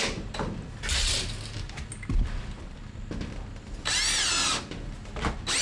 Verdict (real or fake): real